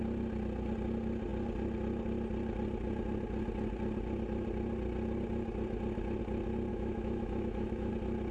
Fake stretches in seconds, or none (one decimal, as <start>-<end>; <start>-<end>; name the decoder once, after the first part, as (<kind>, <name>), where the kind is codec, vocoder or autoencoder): 6.7-7.9 (autoencoder, DAC-VAE)